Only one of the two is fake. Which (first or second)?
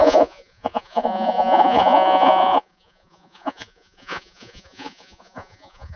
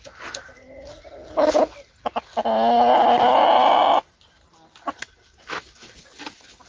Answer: first